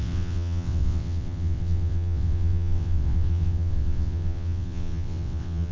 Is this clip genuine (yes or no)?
no